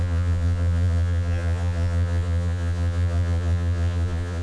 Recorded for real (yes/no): no